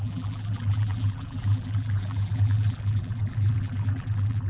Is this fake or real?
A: fake